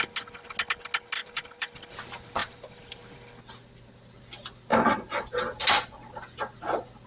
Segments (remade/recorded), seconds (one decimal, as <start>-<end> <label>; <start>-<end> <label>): 0.0-1.2 recorded; 1.2-1.8 remade; 1.8-2.4 recorded; 2.4-3.0 remade; 3.0-7.1 recorded